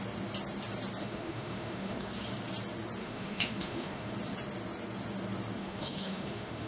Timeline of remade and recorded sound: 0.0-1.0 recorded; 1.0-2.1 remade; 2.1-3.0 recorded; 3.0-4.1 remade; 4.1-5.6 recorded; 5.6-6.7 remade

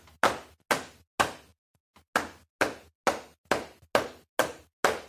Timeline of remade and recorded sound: 0.0-5.1 recorded

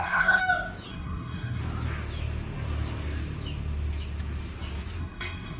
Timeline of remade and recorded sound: 0.0-0.4 remade; 0.4-0.9 recorded; 0.9-1.6 remade; 1.6-5.0 recorded; 5.0-5.6 remade

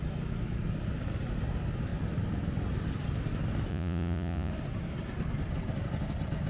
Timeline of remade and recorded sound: 0.0-3.7 recorded; 3.7-4.5 remade; 4.5-6.5 recorded